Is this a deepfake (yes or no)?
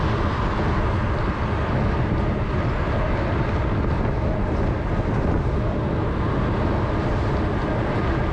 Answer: no